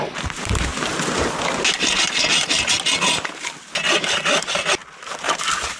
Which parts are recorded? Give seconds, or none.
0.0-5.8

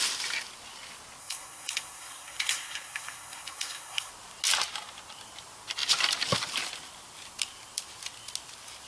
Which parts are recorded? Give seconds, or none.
0.0-1.2; 4.1-8.9

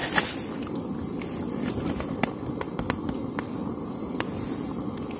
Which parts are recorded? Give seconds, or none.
0.0-5.2

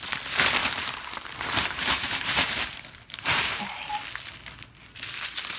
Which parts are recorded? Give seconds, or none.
0.0-0.6; 3.9-5.6

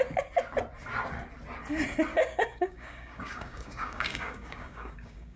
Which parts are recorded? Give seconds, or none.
0.0-2.1

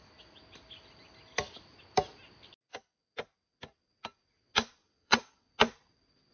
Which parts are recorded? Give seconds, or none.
0.0-4.8; 5.5-6.3

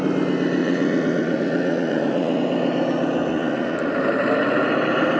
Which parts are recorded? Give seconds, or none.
0.0-0.6; 2.4-3.3; 3.9-5.2